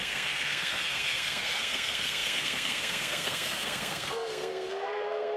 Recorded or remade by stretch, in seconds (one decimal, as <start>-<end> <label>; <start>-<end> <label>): 0.0-5.4 remade

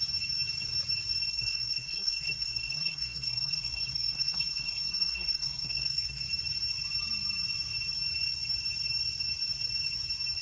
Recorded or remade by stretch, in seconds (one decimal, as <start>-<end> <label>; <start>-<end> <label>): 0.0-1.3 recorded; 1.3-6.2 remade; 6.2-10.4 recorded